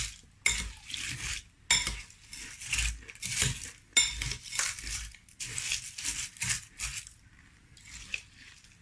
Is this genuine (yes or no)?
yes